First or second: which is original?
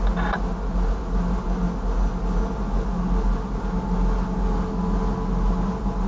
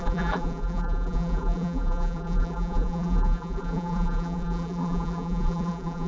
first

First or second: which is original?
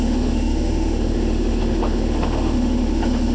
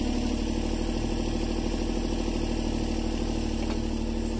second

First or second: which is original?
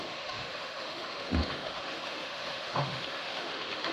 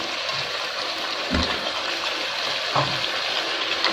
second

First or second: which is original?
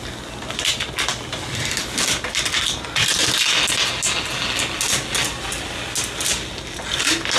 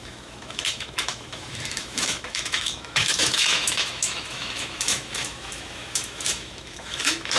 first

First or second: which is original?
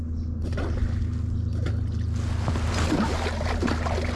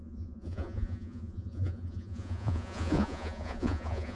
first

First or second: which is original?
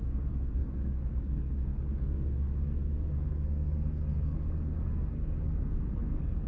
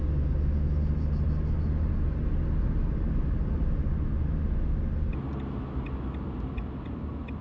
second